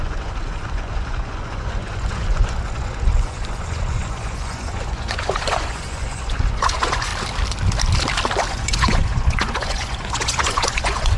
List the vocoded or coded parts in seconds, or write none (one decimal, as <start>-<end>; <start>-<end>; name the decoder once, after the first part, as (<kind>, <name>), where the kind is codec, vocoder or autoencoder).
0.0-7.1 (vocoder, Vocos); 8.5-11.2